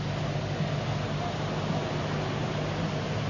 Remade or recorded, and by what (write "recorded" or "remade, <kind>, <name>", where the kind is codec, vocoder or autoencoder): recorded